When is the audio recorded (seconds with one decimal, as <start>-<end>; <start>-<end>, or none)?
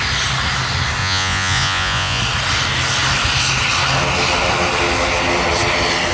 0.0-1.0; 2.2-6.1